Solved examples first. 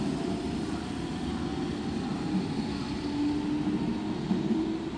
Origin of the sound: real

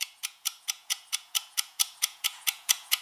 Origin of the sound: fake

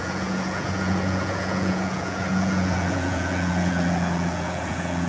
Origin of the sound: fake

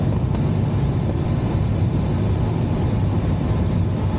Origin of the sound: real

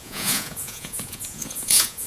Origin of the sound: fake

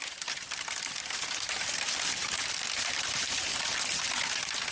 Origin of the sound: real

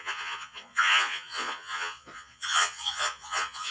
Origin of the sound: fake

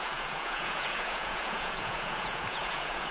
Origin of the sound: fake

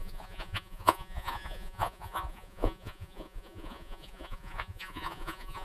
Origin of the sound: fake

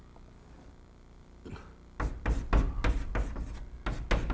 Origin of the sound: real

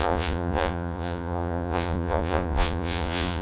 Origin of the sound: fake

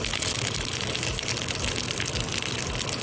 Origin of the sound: real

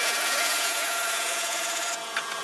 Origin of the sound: fake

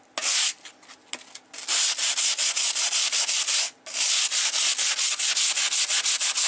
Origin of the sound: real